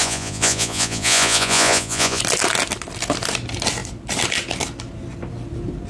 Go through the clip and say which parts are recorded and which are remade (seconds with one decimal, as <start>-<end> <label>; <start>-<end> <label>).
0.0-2.2 remade; 2.2-5.9 recorded